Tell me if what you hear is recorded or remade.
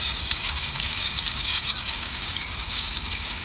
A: remade